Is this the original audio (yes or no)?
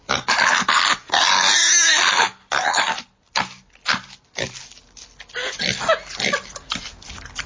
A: yes